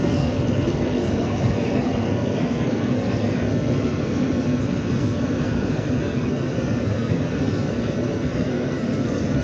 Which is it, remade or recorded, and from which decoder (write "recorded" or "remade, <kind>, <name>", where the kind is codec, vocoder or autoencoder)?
remade, codec, SNAC